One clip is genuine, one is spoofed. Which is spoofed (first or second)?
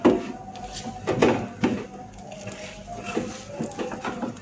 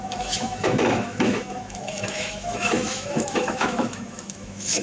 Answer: second